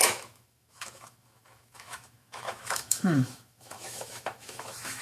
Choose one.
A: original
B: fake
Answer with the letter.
B